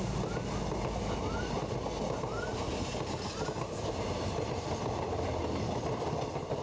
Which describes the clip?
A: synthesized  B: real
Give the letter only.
B